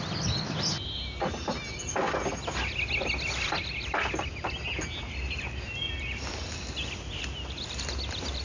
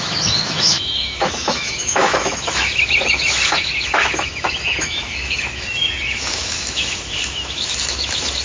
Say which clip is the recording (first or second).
first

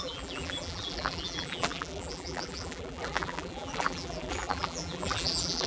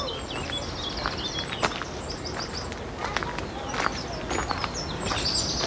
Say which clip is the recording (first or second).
second